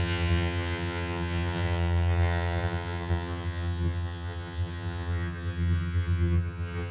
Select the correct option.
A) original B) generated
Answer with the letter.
B